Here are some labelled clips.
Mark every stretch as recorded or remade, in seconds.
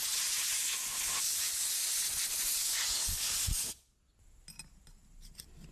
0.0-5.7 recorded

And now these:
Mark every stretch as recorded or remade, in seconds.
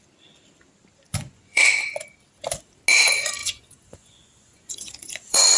0.0-1.1 recorded; 1.1-1.7 remade; 1.7-3.4 recorded; 3.4-5.6 remade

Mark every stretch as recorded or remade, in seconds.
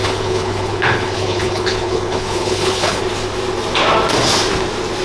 0.0-3.0 remade; 3.0-5.0 recorded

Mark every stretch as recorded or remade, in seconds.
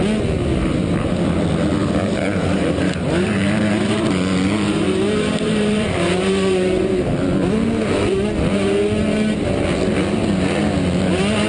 0.0-1.8 recorded; 1.8-7.0 remade; 7.0-11.5 recorded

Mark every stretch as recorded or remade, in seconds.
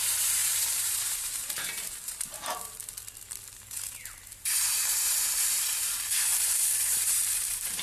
0.0-2.8 remade; 2.8-4.5 recorded; 4.5-7.8 remade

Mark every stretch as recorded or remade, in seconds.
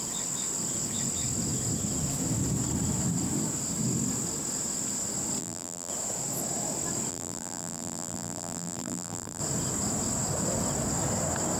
0.0-5.4 recorded; 5.4-5.9 remade; 5.9-7.1 recorded; 7.1-9.4 remade; 9.4-11.6 recorded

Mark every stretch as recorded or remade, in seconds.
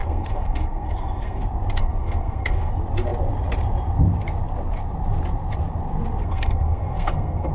0.0-1.4 remade; 1.4-1.8 recorded; 1.8-2.7 remade; 2.7-6.2 recorded; 6.2-7.5 remade